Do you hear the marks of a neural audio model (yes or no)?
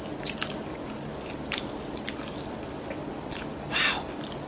no